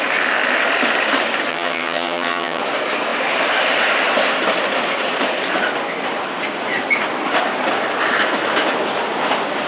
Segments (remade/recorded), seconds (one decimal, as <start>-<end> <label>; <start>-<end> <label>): 0.0-1.5 recorded; 1.5-2.6 remade; 2.6-9.7 recorded